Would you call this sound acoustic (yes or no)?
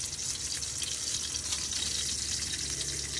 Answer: yes